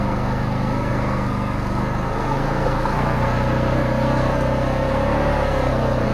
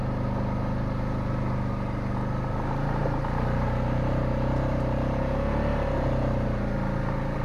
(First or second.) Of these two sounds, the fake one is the first